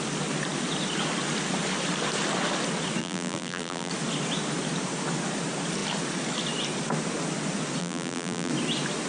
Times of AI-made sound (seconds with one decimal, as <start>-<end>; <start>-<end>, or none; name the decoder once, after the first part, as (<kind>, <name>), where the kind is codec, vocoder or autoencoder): 3.0-3.9 (vocoder, BigVGAN v2); 7.8-8.5